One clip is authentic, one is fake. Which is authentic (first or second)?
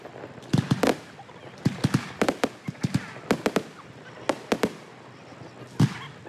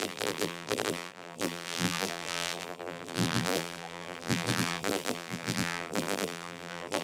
first